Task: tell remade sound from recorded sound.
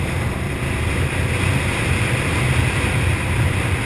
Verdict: recorded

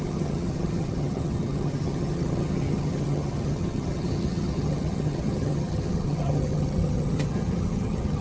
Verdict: remade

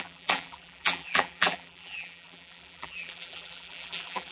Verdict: remade